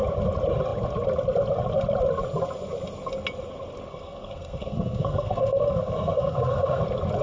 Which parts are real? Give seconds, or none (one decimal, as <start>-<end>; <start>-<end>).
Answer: 0.0-3.9; 6.8-7.2